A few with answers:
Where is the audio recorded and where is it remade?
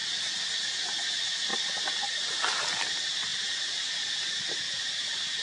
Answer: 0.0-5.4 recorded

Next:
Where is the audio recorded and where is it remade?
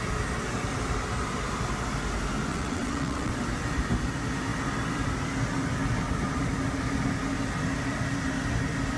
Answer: 0.0-2.5 recorded; 2.5-3.3 remade; 3.3-9.0 recorded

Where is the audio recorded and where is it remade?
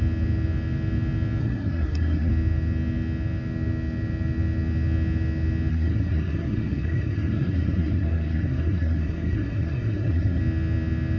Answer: 0.0-1.4 recorded; 1.4-2.3 remade; 2.3-5.7 recorded; 5.7-10.4 remade; 10.4-11.2 recorded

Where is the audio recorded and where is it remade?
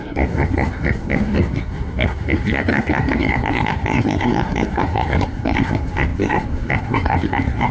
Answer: 0.0-7.7 remade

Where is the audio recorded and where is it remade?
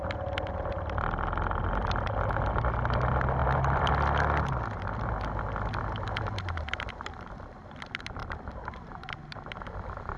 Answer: 0.0-3.4 recorded; 3.4-3.9 remade; 3.9-8.2 recorded; 8.2-8.7 remade; 8.7-10.2 recorded